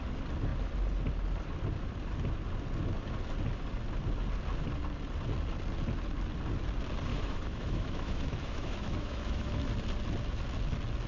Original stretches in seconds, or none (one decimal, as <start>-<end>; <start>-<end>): 0.0-7.1; 9.7-11.1

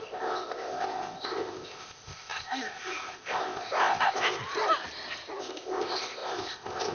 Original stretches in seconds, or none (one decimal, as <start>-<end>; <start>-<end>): 4.4-5.4

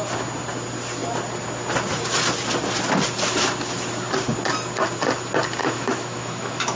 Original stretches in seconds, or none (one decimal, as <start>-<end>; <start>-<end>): 0.0-5.6